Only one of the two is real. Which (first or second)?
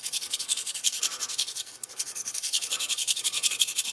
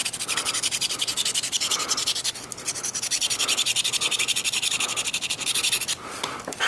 second